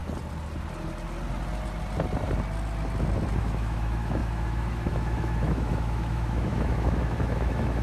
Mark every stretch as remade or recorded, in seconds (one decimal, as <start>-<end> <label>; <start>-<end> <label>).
0.0-3.4 recorded; 3.4-7.8 remade